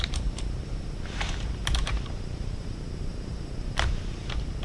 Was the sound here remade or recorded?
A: remade